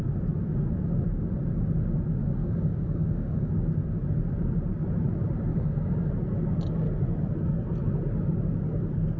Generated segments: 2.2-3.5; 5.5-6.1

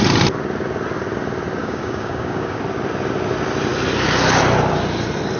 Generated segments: 1.6-2.6

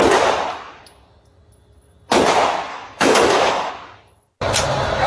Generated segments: 2.7-3.7

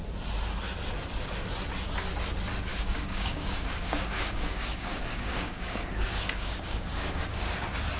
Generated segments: 2.7-7.5

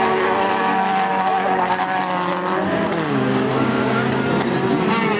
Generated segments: 3.5-4.0